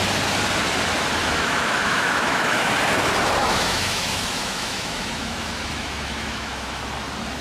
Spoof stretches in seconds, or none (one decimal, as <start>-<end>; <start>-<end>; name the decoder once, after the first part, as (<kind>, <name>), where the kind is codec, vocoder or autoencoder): 1.2-2.7 (autoencoder, DAC-VAE); 3.4-6.8